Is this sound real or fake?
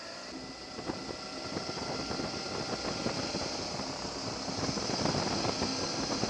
real